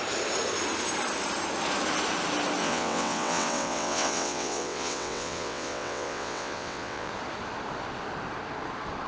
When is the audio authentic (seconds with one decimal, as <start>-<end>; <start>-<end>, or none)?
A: 0.0-2.6; 7.1-9.1